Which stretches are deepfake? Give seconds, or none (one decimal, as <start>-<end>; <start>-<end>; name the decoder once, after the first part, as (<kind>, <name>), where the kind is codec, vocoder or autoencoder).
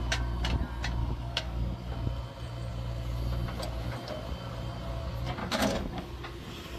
1.0-1.9 (codec, DAC); 5.4-6.1